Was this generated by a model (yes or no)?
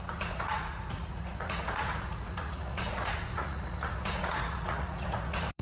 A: yes